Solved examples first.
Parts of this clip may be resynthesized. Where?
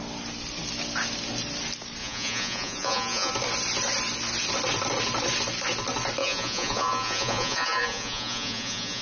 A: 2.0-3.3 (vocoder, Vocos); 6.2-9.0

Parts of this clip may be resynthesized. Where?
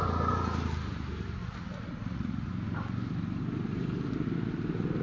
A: 1.4-2.5 (vocoder, Vocos)